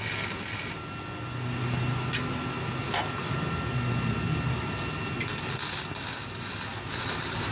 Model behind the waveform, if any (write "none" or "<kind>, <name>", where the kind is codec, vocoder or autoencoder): none